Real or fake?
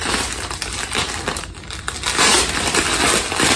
real